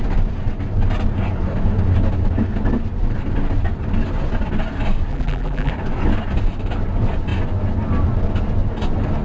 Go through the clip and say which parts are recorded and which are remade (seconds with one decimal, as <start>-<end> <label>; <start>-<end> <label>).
0.0-5.1 recorded; 5.1-5.7 remade; 5.7-9.2 recorded